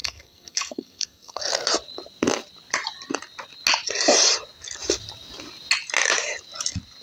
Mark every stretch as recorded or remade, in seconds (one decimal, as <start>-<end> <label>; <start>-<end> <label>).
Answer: 0.0-1.4 remade; 1.4-7.0 recorded

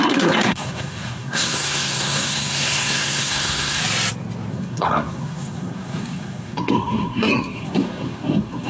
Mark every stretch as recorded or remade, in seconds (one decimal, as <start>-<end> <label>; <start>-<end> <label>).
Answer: 0.0-3.8 remade; 3.8-4.5 recorded; 4.5-8.7 remade